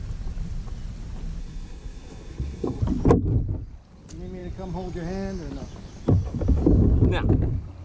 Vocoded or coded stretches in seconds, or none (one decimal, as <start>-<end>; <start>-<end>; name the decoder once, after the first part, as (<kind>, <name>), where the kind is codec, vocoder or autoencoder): 1.4-2.8 (codec, SNAC)